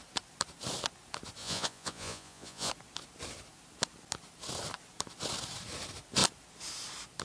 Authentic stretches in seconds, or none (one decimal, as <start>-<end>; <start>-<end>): 0.0-1.4; 2.7-7.2